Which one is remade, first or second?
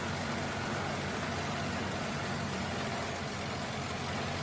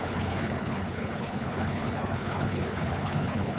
second